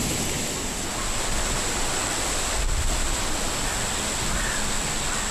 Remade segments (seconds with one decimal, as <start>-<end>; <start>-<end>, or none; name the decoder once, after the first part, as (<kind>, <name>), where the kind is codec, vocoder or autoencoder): none